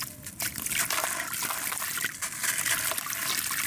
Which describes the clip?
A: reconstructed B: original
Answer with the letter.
B